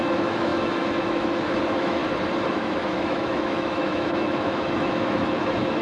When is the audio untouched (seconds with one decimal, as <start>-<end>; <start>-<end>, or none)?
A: 2.0-2.5